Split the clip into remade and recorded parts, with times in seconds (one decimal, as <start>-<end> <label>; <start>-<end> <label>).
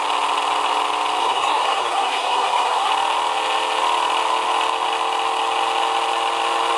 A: 0.0-1.2 recorded; 1.2-2.9 remade; 2.9-6.8 recorded